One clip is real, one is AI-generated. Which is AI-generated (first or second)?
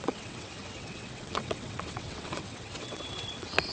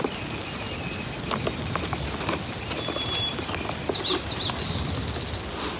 first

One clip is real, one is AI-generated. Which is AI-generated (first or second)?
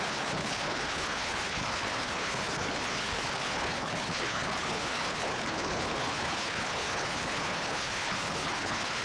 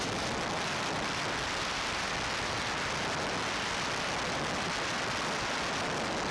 first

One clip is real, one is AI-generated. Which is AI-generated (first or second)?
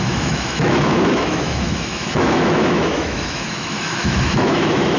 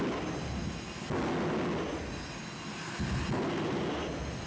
first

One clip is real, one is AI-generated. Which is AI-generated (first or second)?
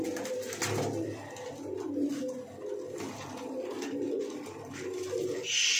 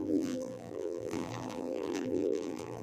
second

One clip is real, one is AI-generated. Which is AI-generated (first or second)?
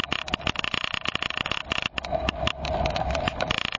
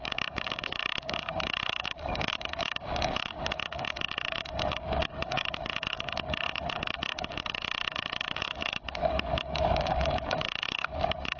second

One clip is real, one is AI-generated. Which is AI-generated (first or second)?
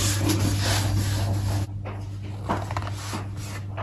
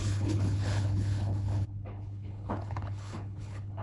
second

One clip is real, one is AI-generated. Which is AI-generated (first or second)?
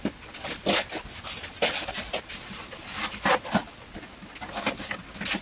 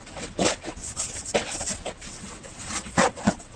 second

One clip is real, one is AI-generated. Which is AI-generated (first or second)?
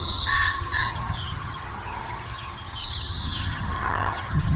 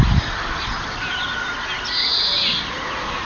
first